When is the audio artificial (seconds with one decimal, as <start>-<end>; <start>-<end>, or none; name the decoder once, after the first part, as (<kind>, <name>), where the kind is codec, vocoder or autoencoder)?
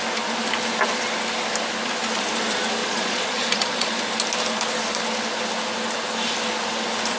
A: 2.8-4.0 (vocoder, Vocos)